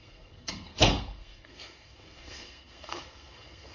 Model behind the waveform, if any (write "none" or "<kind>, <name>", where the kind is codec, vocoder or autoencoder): codec, SNAC